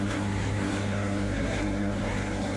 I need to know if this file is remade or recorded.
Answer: remade